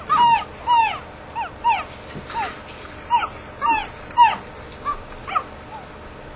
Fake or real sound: real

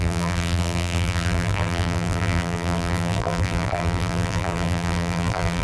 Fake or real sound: fake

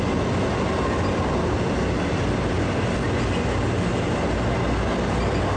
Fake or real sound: real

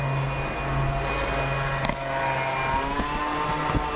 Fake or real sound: real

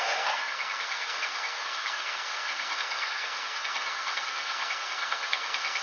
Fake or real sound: fake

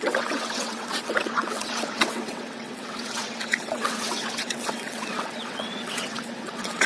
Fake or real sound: fake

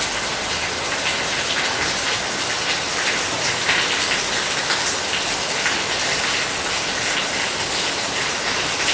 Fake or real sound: real